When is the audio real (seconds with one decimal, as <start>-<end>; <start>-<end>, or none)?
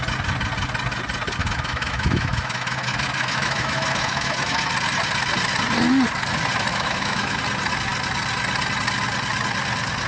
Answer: 0.0-1.4; 4.7-6.7; 7.4-10.1